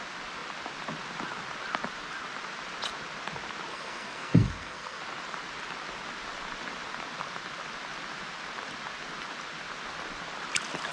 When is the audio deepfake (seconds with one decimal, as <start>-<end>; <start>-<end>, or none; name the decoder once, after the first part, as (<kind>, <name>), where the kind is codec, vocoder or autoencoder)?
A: 3.7-5.0 (codec, SNAC)